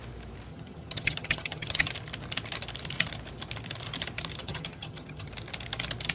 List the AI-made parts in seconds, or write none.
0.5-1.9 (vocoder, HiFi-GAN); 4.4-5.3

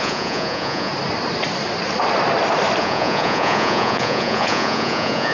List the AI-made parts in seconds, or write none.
0.0-0.9 (vocoder, Vocos); 2.8-5.3

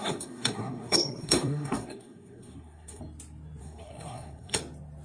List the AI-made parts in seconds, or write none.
0.0-3.0 (codec, SNAC); 3.6-4.6

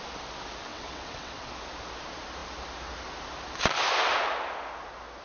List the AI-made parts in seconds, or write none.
0.7-1.5 (vocoder, WaveNeXt)

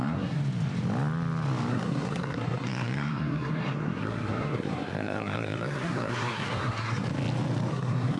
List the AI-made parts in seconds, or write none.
0.0-0.4 (codec, SNAC); 1.7-7.1; 7.7-8.2

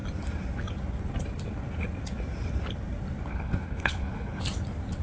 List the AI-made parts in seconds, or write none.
3.3-4.4 (codec, HILCodec)

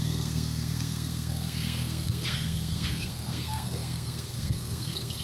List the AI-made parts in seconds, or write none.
0.0-5.2 (codec, SNAC)

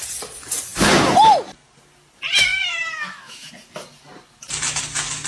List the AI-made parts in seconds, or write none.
2.5-3.5 (autoencoder, DAC-VAE)